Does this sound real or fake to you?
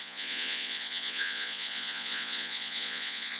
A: fake